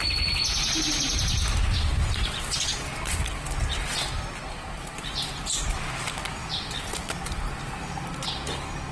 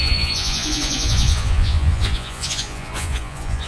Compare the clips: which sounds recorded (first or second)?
first